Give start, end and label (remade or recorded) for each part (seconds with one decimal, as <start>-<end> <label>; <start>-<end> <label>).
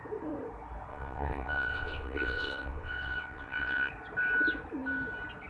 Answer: 0.0-0.9 recorded; 0.9-3.9 remade; 3.9-5.5 recorded